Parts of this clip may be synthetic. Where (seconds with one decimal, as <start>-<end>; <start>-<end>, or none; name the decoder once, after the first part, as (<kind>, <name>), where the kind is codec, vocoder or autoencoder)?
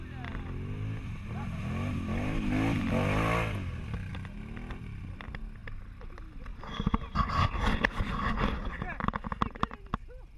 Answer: none